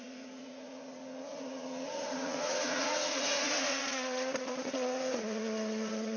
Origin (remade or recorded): remade